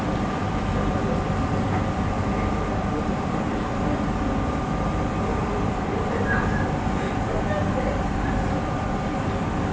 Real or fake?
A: fake